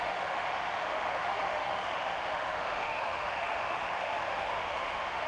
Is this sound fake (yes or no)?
yes